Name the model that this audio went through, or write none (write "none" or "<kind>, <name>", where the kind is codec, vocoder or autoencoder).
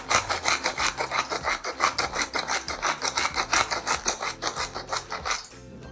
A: none